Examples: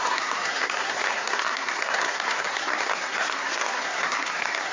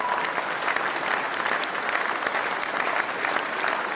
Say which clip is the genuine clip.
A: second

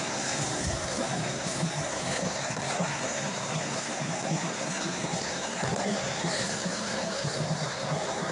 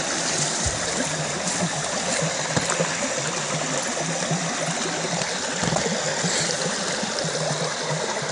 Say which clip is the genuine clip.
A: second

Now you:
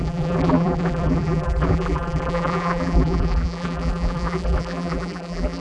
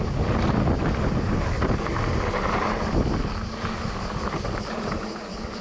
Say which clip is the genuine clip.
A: second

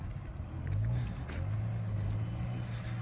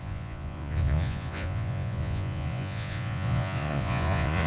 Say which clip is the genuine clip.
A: first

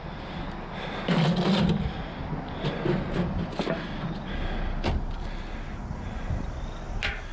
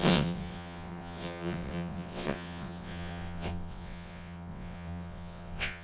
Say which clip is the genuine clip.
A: first